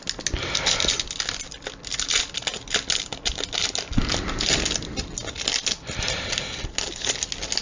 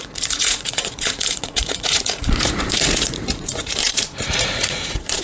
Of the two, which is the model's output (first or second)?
second